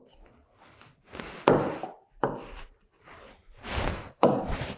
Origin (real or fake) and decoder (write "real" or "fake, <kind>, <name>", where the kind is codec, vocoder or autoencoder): real